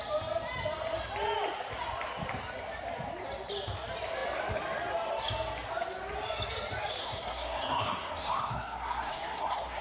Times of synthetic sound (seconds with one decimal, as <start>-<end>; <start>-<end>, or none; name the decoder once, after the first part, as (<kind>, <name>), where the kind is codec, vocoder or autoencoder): 7.0-9.8 (codec, SNAC)